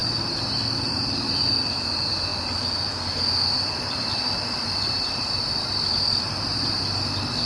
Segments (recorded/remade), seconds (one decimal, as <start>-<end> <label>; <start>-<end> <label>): 0.0-7.5 recorded